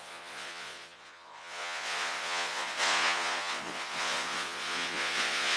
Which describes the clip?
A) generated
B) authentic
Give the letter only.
A